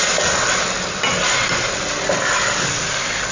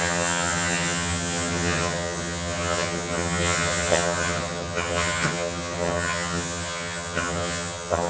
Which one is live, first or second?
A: first